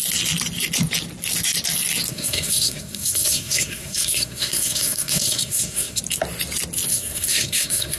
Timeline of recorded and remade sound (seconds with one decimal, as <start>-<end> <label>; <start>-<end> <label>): 0.0-2.1 recorded; 2.1-6.0 remade; 6.0-6.9 recorded; 6.9-8.0 remade

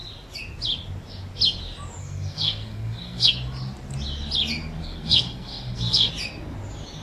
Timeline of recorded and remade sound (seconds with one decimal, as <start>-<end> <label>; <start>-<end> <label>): 0.0-2.0 recorded; 2.0-3.3 remade; 3.3-4.8 recorded; 4.8-6.1 remade; 6.1-7.0 recorded